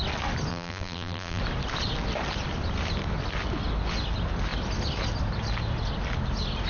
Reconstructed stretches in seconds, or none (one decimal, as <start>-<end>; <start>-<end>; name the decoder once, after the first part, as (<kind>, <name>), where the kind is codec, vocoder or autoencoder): 0.5-1.4 (vocoder, BigVGAN v2)